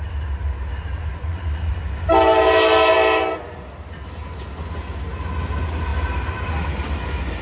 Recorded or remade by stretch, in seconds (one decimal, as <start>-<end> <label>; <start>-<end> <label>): 0.0-1.2 recorded; 1.2-1.7 remade; 1.7-7.4 recorded